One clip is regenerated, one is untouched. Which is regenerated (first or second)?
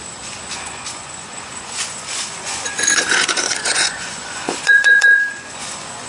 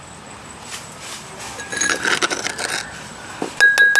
first